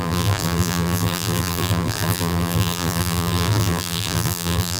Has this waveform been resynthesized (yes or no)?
yes